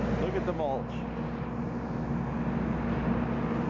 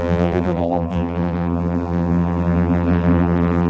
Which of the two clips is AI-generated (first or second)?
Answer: second